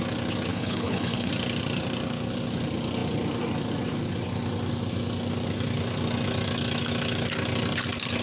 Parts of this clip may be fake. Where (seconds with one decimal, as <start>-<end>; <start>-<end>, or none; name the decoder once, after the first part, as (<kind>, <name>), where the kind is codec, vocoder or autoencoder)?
0.5-1.3 (codec, HILCodec)